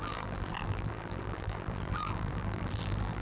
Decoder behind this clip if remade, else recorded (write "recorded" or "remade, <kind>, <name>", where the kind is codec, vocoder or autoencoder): remade, vocoder, BigVGAN v2